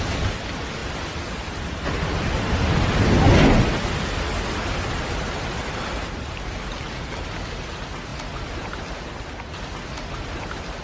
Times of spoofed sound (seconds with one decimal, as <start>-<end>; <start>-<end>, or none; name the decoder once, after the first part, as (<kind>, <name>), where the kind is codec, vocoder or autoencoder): none